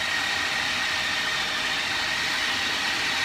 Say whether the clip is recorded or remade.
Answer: recorded